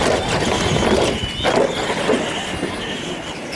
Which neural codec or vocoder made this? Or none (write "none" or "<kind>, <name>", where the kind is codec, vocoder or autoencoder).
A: none